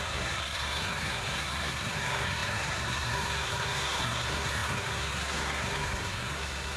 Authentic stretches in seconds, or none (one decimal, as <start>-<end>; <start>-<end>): none